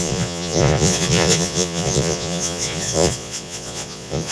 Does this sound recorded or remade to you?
remade